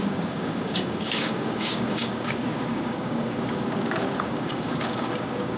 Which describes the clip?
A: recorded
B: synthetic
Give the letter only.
B